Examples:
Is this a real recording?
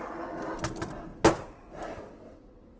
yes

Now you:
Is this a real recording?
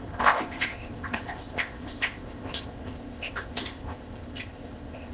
no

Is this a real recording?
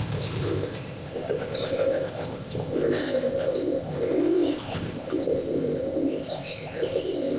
no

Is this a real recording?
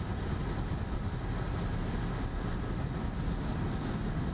yes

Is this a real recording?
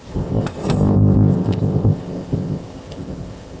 no